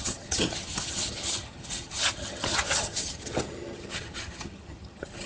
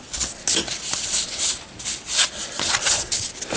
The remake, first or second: first